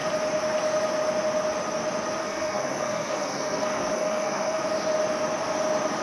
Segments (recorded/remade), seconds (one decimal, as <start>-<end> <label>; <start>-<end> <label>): 0.0-2.2 recorded; 2.2-4.6 remade; 4.6-6.0 recorded